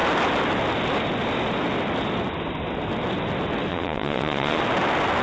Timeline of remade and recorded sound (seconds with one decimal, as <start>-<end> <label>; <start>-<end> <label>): 0.0-3.7 recorded; 3.7-4.6 remade; 4.6-5.2 recorded